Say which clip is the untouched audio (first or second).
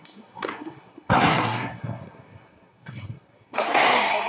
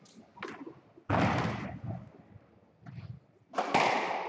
second